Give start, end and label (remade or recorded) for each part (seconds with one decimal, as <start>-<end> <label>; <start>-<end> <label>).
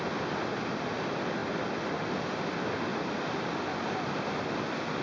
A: 0.0-1.4 recorded; 1.4-2.1 remade; 2.1-5.0 recorded